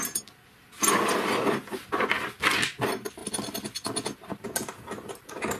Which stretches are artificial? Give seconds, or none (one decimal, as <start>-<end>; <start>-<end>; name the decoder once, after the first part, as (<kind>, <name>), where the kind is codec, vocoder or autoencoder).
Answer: none